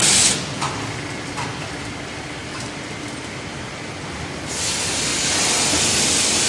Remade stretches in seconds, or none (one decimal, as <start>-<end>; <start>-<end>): 2.4-3.6